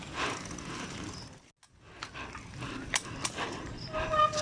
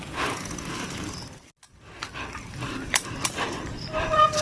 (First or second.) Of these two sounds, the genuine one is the first